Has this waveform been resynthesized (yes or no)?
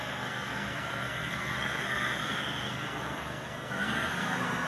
yes